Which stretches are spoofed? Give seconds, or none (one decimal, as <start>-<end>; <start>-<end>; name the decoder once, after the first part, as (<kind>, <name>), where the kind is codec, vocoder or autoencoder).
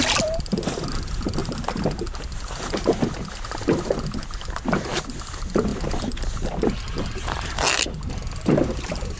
none